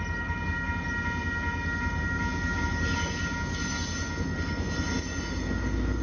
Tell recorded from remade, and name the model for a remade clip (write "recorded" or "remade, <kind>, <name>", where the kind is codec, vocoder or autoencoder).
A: recorded